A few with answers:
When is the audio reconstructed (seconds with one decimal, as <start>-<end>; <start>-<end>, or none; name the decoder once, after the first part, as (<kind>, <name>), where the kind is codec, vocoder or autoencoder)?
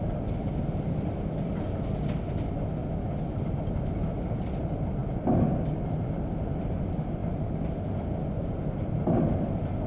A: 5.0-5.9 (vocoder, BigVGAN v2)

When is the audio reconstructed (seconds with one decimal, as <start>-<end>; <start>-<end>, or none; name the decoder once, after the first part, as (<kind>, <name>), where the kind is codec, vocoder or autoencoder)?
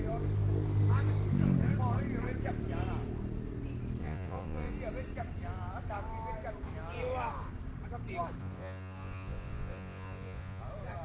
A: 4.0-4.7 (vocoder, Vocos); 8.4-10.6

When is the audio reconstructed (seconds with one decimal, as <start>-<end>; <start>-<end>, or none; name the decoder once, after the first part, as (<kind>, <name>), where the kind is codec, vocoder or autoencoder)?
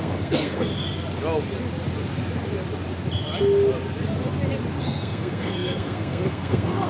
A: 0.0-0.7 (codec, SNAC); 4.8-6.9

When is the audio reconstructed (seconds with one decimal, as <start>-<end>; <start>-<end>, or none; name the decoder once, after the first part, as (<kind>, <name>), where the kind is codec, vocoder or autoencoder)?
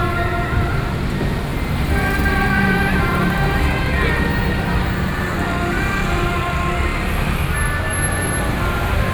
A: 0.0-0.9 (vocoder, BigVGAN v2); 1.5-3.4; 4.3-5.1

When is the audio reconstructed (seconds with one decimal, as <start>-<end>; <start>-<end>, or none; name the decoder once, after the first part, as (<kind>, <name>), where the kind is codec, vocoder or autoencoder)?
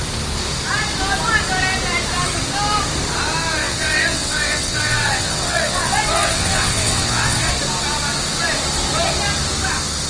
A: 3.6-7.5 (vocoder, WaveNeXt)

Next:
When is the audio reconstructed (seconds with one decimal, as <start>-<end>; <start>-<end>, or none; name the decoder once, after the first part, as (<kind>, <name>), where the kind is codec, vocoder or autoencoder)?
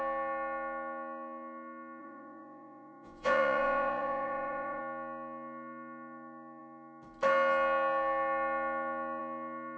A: 2.0-4.8 (vocoder, Vocos)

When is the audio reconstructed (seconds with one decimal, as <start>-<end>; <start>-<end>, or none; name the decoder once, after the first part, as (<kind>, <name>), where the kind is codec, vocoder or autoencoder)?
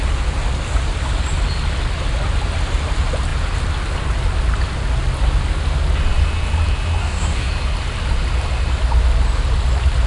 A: 7.0-7.5 (codec, DAC)